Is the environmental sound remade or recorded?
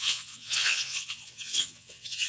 remade